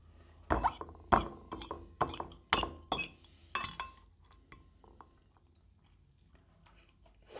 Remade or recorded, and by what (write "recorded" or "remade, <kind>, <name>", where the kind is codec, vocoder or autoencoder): recorded